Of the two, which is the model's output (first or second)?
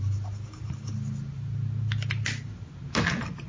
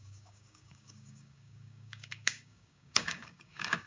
second